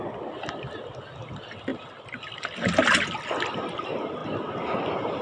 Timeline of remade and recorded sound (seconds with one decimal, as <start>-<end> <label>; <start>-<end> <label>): 0.0-5.2 recorded